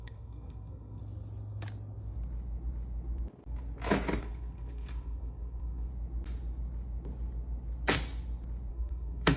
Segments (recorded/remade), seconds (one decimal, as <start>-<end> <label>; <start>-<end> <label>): 0.0-1.0 remade; 1.0-4.2 recorded; 4.2-5.9 remade; 5.9-8.7 recorded; 8.7-9.4 remade